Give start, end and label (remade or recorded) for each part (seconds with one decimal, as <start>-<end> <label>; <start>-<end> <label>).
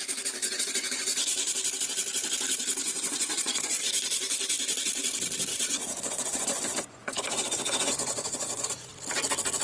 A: 0.0-0.4 recorded; 0.4-1.5 remade; 1.5-2.8 recorded; 2.8-3.8 remade; 3.8-5.5 recorded; 5.5-8.9 remade; 8.9-9.6 recorded